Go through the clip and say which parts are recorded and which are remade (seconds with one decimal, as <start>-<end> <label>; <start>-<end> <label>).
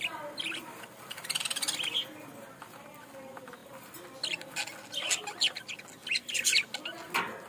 0.0-7.5 recorded